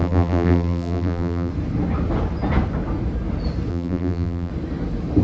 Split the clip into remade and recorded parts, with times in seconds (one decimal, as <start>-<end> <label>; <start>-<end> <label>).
0.0-1.5 remade; 1.5-3.7 recorded; 3.7-4.5 remade; 4.5-5.2 recorded